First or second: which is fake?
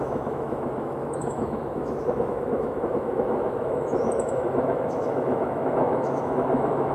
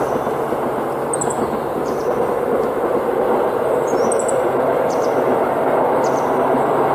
first